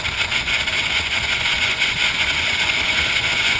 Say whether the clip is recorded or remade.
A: remade